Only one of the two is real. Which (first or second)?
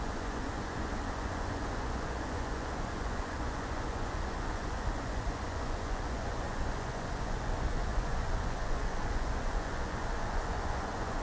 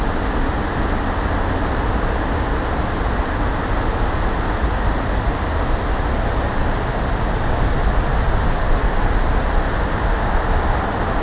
second